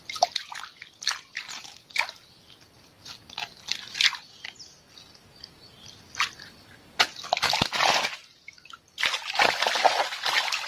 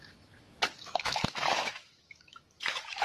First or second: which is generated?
second